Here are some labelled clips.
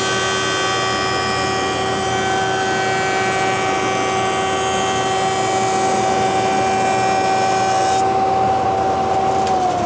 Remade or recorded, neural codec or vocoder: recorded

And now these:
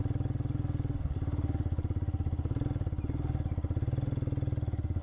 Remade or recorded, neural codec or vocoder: recorded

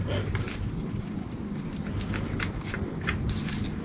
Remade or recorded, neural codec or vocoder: recorded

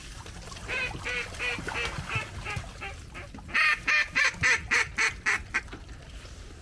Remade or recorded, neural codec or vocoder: recorded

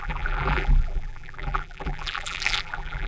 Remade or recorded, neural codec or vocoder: remade, vocoder, BigVGAN v2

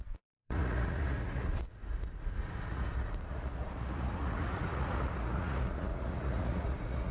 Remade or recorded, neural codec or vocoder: remade, vocoder, Vocos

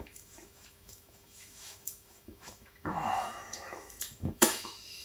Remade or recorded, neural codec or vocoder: remade, autoencoder, DAC-VAE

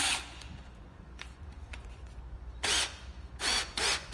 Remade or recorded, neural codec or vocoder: remade, vocoder, Vocos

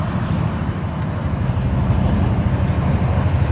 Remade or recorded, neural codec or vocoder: recorded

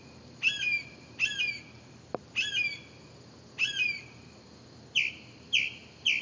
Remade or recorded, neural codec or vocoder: remade, vocoder, BigVGAN v2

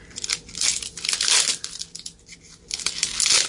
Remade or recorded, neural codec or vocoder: recorded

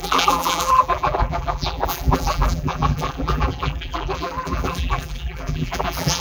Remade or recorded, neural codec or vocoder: remade, vocoder, BigVGAN v2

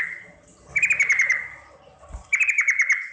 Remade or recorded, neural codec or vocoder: recorded